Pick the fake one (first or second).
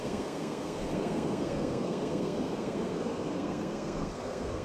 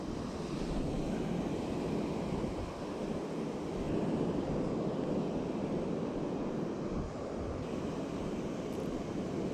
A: first